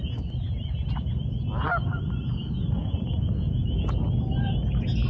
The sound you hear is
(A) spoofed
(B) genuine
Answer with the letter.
B